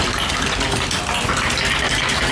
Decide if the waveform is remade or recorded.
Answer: recorded